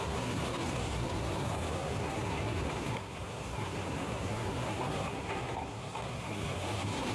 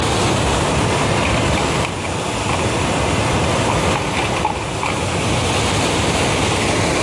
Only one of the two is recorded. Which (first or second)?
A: second